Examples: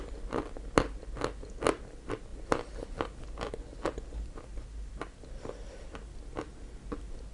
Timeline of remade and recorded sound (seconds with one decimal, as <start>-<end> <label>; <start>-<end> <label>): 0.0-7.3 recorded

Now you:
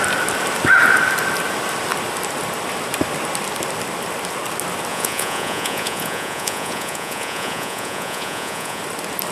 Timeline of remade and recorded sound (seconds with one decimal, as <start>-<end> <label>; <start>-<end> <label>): 0.0-4.9 recorded; 4.9-8.8 remade; 8.8-9.3 recorded

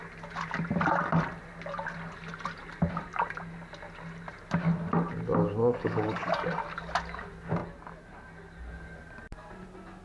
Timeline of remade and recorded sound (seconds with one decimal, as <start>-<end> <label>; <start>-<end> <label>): 0.0-5.6 recorded; 5.6-6.3 remade; 6.3-10.0 recorded

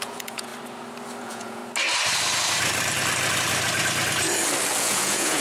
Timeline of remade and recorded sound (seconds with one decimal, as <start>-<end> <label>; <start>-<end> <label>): 0.0-0.5 remade; 0.5-1.2 recorded; 1.2-1.6 remade; 1.6-4.8 recorded; 4.8-5.4 remade